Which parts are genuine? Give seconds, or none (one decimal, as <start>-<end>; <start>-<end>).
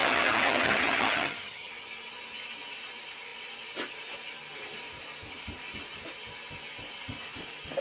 1.7-7.8